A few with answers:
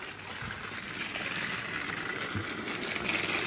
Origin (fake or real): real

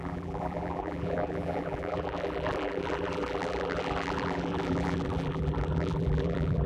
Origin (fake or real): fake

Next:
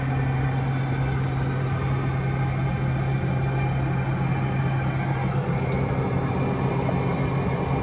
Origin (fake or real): real